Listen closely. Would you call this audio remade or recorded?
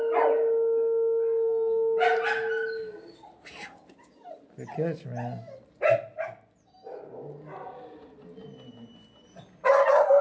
recorded